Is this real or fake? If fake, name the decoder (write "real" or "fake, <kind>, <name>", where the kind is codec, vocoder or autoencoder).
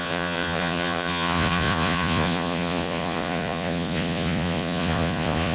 fake, vocoder, Vocos